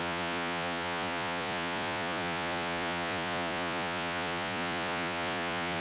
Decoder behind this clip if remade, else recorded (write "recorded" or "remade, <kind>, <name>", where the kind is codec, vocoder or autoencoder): remade, vocoder, Vocos